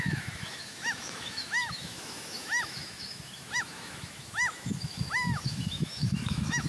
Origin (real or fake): fake